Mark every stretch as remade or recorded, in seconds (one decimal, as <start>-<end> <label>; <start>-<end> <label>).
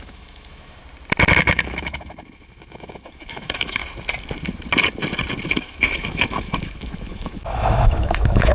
0.0-0.8 remade; 0.8-1.4 recorded; 1.4-3.8 remade; 3.8-5.5 recorded; 5.5-8.5 remade